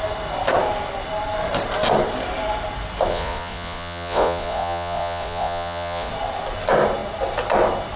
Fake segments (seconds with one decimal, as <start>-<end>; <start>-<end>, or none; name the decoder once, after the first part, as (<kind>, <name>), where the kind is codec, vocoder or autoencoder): 3.1-6.1 (vocoder, Vocos)